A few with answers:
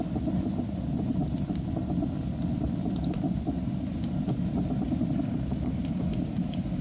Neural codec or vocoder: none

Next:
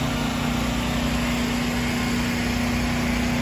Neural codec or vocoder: none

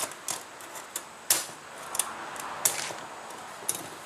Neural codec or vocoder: none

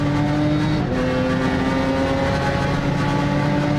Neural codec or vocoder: none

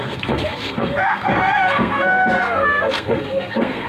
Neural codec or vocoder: codec, SNAC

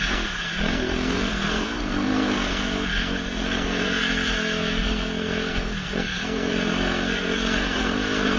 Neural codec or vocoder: codec, SNAC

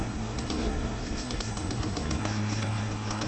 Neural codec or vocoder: codec, SNAC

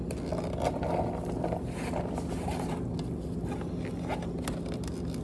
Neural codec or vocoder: none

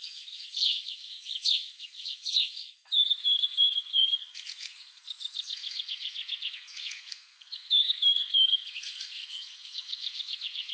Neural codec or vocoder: codec, SNAC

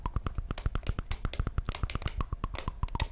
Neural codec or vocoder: none